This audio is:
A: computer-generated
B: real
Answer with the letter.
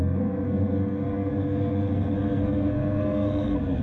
A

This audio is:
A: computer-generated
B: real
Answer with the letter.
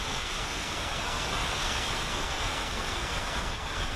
A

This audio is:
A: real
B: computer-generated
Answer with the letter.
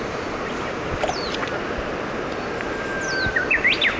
A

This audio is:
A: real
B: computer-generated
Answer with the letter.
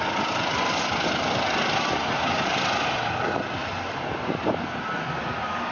A